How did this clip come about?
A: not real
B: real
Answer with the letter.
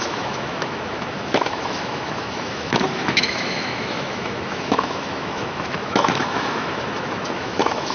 A